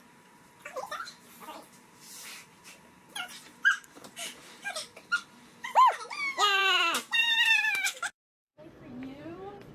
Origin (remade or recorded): remade